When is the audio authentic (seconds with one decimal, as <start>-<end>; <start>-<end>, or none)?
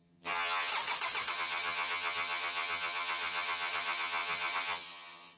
0.7-1.3